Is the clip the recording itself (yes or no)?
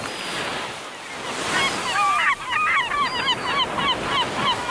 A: yes